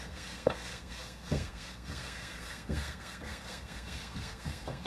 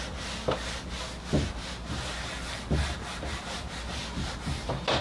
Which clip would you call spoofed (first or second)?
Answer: first